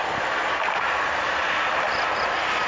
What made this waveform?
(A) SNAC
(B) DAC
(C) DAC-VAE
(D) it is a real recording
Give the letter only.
D